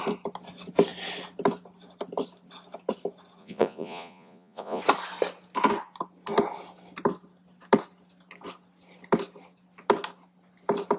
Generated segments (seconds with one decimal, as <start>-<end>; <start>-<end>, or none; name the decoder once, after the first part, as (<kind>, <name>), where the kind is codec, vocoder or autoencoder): 3.4-4.8 (vocoder, Vocos)